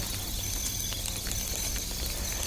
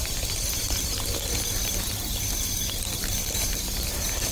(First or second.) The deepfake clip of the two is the second